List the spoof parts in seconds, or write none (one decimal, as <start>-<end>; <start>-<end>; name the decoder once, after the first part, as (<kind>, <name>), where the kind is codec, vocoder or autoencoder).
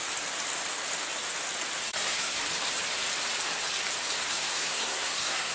1.8-2.4 (codec, SNAC); 4.2-5.5